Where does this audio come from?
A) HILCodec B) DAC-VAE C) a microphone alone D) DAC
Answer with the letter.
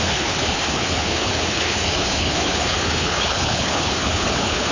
A